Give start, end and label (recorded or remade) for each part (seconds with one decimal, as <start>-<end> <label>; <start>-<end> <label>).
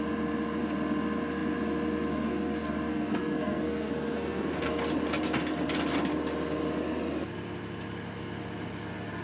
0.0-2.9 recorded; 2.9-4.7 remade; 4.7-9.2 recorded